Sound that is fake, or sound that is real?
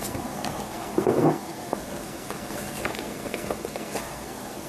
fake